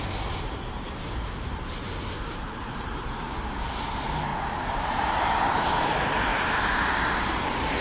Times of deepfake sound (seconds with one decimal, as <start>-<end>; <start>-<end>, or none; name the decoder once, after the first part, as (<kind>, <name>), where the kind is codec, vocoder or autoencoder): 0.0-4.3 (vocoder, BigVGAN v2); 4.8-6.3; 7.2-7.8